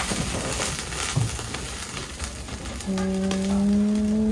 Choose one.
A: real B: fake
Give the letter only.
A